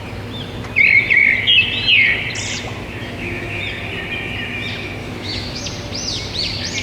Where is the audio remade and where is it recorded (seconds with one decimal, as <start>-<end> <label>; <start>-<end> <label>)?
0.0-3.0 recorded; 3.0-3.6 remade; 3.6-5.0 recorded; 5.0-5.6 remade; 5.6-6.8 recorded